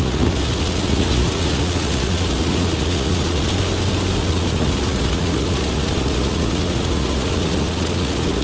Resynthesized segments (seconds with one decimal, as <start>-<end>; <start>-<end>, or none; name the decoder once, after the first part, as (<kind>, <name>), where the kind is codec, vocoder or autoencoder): 0.0-3.5 (vocoder, Vocos); 4.2-8.4